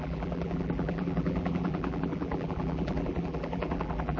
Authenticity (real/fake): fake